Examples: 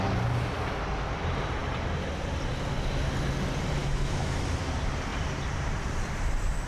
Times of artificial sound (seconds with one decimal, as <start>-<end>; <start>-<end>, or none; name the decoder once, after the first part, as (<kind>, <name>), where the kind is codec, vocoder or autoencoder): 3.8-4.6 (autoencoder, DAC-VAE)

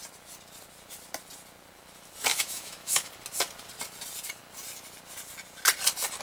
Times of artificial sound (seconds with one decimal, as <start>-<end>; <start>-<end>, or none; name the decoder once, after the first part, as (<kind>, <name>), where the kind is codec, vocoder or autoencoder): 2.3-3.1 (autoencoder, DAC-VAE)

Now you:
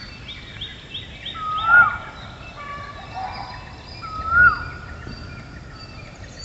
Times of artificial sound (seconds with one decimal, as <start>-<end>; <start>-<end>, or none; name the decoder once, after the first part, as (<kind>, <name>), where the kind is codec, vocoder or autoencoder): none

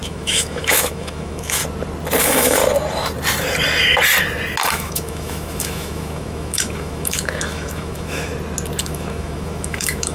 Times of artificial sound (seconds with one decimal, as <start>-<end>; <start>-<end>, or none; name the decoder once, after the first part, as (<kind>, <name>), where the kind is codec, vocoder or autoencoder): 0.0-1.6 (autoencoder, DAC-VAE); 2.2-2.6; 4.7-8.3; 8.8-10.1

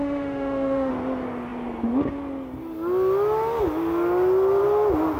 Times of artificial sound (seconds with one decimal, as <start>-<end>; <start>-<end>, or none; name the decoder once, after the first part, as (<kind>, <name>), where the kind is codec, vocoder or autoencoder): 0.0-0.9 (autoencoder, DAC-VAE)